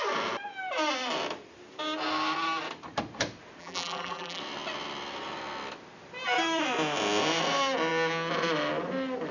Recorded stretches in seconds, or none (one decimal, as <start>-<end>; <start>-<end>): 0.0-3.6; 4.4-9.3